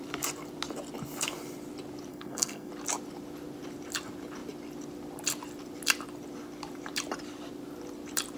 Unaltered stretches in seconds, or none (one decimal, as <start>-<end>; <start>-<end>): 0.0-2.1; 2.7-8.4